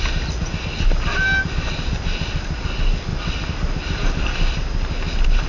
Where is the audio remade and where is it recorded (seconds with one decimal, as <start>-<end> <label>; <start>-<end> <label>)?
0.0-5.5 recorded